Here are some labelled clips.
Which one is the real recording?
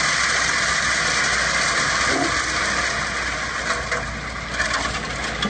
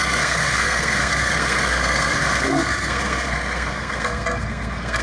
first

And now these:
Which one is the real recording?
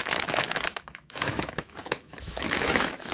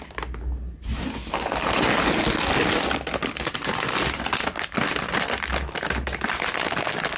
second